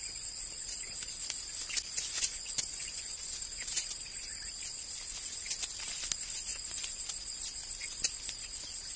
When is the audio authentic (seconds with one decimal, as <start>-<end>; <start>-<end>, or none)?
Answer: 0.0-2.1; 3.4-6.5; 7.0-9.0